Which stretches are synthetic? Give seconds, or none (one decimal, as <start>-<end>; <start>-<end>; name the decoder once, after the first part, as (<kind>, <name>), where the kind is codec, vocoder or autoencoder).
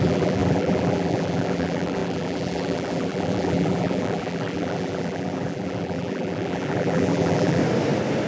0.0-7.6 (vocoder, BigVGAN v2)